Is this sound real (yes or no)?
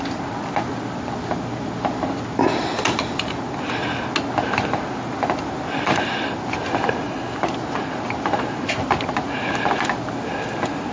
yes